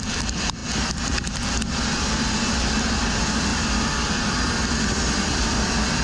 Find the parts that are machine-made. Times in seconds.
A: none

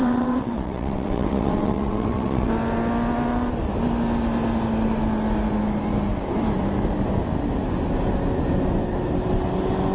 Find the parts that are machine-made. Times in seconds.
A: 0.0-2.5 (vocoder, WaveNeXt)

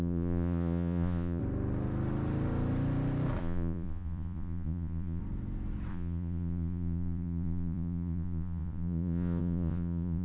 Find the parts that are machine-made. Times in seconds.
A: 0.0-1.4 (vocoder, Vocos); 3.4-5.2; 5.9-10.2

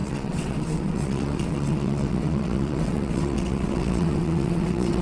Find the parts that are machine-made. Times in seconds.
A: 0.0-5.0 (vocoder, WaveNeXt)

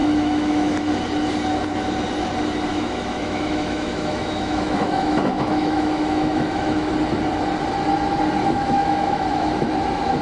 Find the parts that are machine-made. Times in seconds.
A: 0.0-0.9 (autoencoder, DAC-VAE); 2.7-6.9; 8.4-9.7

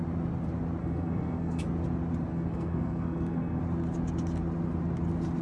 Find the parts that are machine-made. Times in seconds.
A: 0.8-1.6 (codec, SNAC); 2.3-3.6

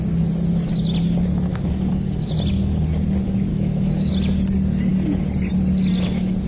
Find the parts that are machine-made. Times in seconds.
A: 1.5-2.3 (codec, DAC); 3.5-4.1

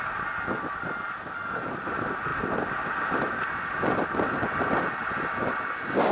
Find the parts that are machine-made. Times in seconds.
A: none